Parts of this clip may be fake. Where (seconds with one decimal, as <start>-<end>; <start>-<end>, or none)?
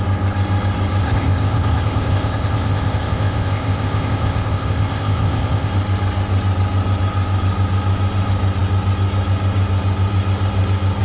1.0-5.7